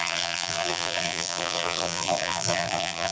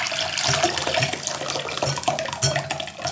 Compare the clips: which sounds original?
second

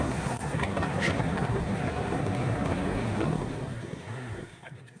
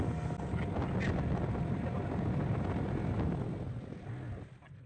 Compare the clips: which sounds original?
second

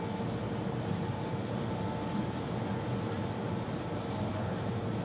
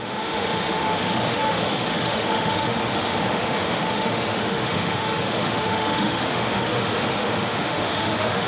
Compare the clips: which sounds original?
first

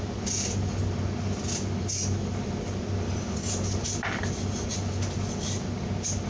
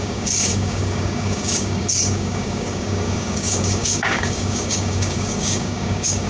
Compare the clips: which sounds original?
first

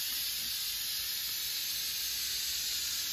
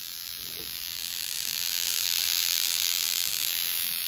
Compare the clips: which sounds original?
first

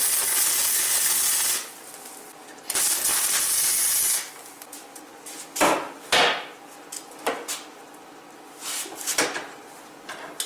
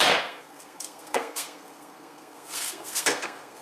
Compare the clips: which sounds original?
first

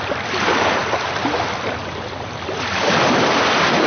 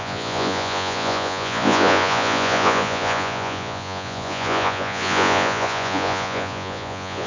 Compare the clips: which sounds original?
first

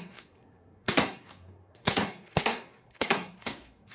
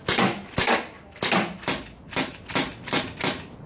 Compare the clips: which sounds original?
second